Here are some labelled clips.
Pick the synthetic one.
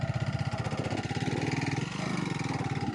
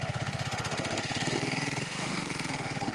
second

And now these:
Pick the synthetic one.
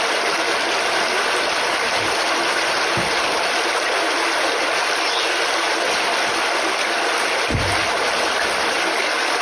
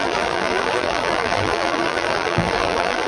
second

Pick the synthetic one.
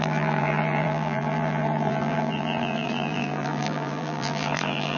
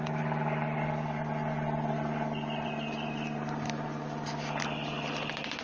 first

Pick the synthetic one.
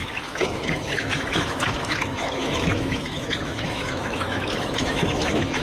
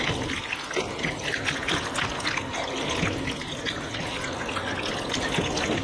first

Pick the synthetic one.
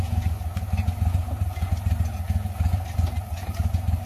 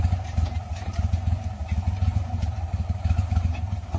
second